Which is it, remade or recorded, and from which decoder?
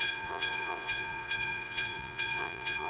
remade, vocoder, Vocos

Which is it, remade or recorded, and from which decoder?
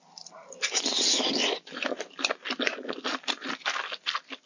recorded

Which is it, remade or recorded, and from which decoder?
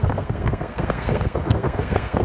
remade, codec, SNAC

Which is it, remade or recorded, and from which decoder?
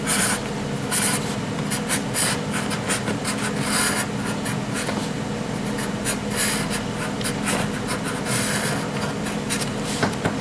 recorded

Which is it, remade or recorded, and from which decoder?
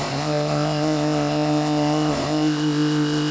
remade, codec, ZipCodec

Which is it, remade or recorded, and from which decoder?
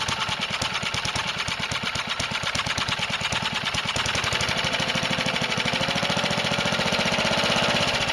recorded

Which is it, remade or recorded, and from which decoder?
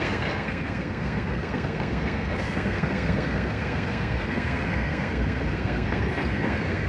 remade, codec, SNAC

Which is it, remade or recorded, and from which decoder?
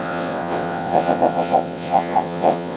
remade, vocoder, WaveNeXt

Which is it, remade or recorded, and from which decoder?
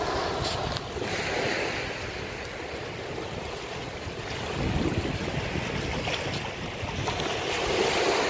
recorded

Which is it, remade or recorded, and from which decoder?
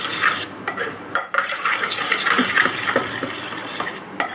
recorded